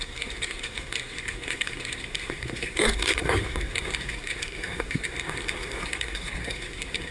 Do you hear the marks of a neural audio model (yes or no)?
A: yes